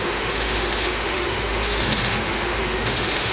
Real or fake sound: fake